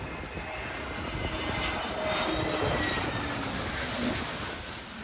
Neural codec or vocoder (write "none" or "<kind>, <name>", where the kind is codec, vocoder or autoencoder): none